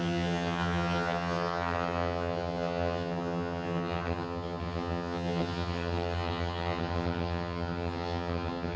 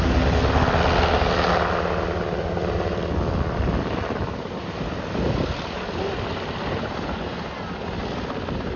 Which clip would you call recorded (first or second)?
second